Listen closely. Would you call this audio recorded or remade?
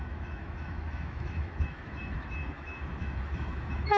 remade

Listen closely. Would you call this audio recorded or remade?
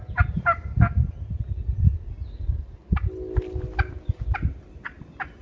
recorded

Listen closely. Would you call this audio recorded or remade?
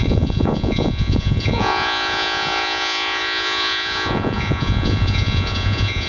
remade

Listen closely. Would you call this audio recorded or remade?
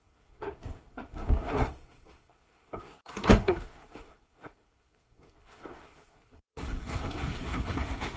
remade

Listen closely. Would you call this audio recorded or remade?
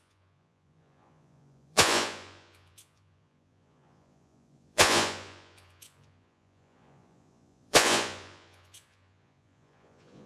remade